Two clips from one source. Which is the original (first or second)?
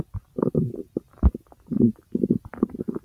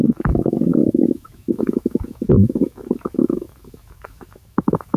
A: first